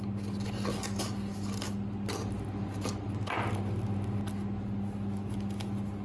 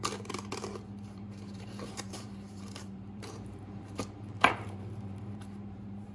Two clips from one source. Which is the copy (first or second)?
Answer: second